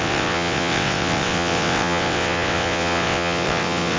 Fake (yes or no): yes